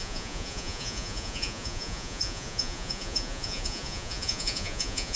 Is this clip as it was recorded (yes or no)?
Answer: no